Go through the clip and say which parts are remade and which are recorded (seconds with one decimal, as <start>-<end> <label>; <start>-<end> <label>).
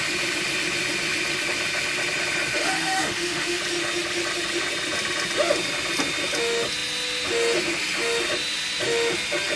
0.0-2.5 recorded; 2.5-3.6 remade; 3.6-9.6 recorded